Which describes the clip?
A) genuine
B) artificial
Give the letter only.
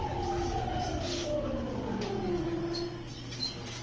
A